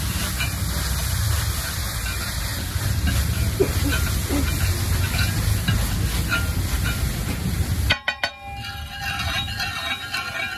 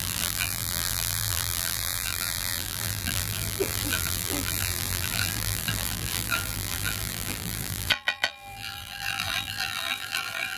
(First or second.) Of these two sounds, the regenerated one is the second